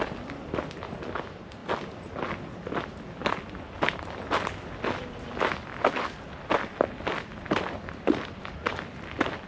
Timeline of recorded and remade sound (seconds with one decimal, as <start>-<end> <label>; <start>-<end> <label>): 0.0-9.5 recorded